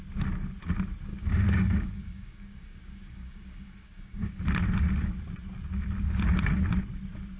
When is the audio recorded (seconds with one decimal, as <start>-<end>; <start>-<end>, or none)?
0.0-1.1; 4.4-7.4